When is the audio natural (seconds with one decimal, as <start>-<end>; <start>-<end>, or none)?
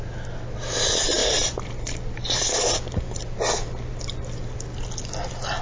0.0-5.6